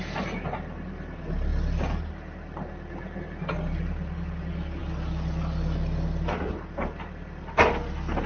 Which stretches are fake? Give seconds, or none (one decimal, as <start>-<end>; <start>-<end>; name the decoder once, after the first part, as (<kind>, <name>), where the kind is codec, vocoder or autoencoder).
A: none